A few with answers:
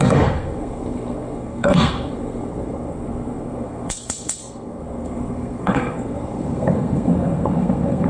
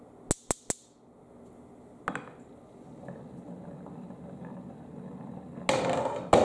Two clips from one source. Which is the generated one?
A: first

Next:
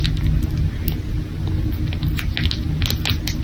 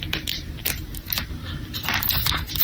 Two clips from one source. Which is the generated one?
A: second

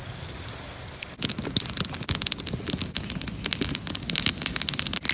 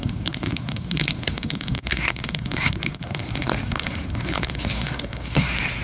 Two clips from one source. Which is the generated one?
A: second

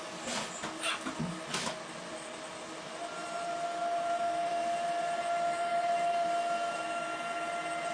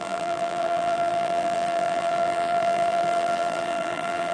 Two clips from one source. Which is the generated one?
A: second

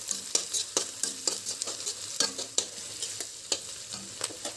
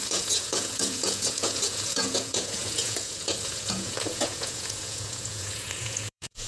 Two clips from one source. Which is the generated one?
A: second